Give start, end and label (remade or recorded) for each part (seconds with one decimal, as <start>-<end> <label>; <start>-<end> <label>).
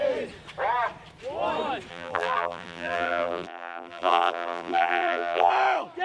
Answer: 0.0-1.9 recorded; 1.9-5.5 remade; 5.5-6.0 recorded